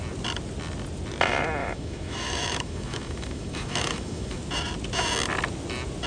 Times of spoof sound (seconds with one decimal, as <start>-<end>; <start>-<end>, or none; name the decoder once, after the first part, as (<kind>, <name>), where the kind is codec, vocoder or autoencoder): 1.6-4.4 (autoencoder, DAC-VAE)